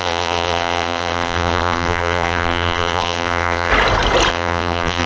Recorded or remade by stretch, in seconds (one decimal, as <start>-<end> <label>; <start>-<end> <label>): 0.0-3.7 remade; 3.7-4.3 recorded; 4.3-5.1 remade